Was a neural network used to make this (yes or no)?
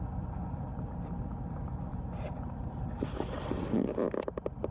no